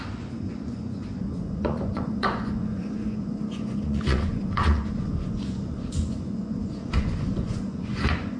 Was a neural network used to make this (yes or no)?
yes